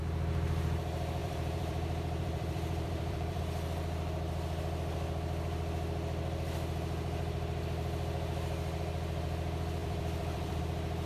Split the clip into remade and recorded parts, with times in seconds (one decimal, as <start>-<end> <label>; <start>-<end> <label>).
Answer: 0.0-1.2 recorded; 1.2-3.4 remade; 3.4-9.8 recorded; 9.8-10.6 remade; 10.6-11.1 recorded

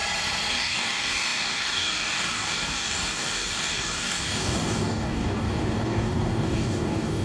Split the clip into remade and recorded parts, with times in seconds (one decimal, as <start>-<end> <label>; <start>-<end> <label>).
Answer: 0.0-0.5 recorded; 0.5-7.2 remade

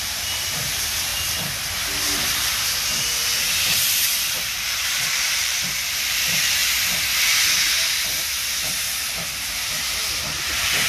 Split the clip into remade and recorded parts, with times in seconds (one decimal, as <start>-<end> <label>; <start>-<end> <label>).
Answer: 0.0-1.1 remade; 1.1-4.4 recorded; 4.4-6.6 remade; 6.6-10.4 recorded; 10.4-10.9 remade

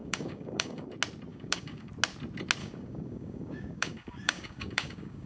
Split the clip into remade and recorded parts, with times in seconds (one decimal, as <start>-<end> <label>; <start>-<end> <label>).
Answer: 0.0-0.9 remade; 0.9-1.3 recorded; 1.3-1.9 remade; 1.9-2.6 recorded; 2.6-5.3 remade

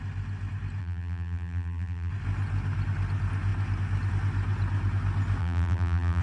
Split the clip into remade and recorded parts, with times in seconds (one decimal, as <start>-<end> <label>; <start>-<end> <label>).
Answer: 0.0-0.8 recorded; 0.8-2.1 remade; 2.1-5.4 recorded; 5.4-6.2 remade

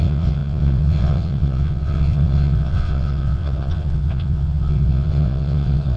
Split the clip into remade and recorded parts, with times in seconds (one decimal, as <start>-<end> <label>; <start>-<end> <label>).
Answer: 0.0-6.0 remade